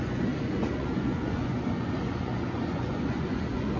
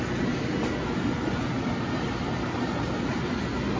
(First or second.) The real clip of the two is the second